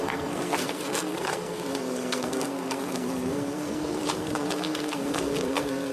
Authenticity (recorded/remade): remade